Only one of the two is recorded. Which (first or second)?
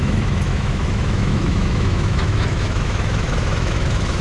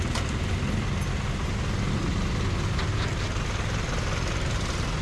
second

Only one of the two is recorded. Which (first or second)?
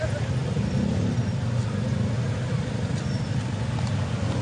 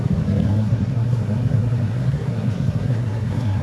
first